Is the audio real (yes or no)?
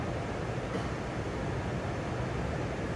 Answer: yes